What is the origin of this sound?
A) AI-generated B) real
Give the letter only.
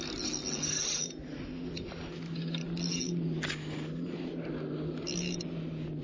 B